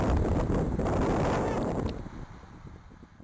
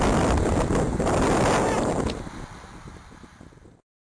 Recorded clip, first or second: second